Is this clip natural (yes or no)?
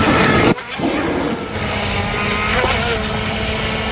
yes